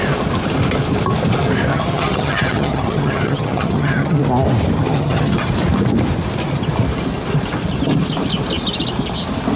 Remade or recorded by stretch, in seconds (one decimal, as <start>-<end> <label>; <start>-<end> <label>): 0.0-1.7 recorded; 1.7-4.2 remade; 4.2-4.8 recorded; 4.8-5.5 remade; 5.5-9.6 recorded